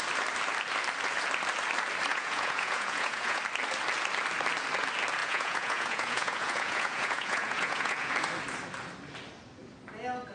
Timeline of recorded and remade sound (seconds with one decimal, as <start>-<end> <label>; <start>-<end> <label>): 0.0-2.1 recorded; 2.1-3.4 remade; 3.4-5.2 recorded; 5.2-8.1 remade; 8.1-10.3 recorded